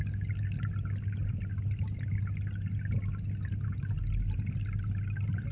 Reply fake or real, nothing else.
real